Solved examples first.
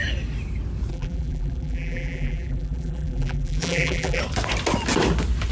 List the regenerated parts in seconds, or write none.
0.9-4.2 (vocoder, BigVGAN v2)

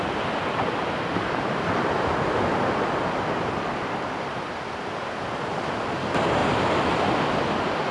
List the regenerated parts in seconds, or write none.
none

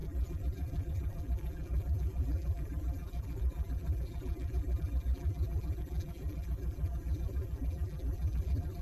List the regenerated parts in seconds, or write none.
0.0-8.8 (vocoder, BigVGAN v2)

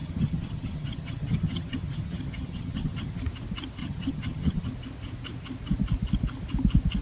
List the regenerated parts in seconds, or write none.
0.0-3.2 (vocoder, HiFi-GAN); 3.8-4.7

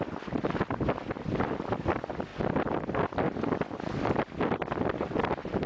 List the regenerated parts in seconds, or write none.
none

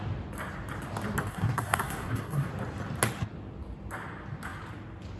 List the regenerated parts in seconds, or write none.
1.3-2.5 (codec, SNAC)

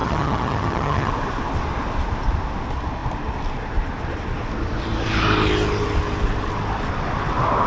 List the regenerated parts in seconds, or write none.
0.0-1.1 (vocoder, HiFi-GAN)